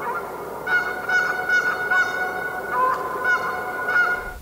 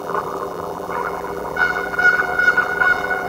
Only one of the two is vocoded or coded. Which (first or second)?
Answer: second